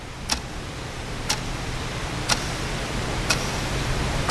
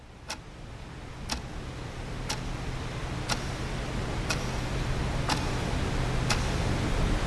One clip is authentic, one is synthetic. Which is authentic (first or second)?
second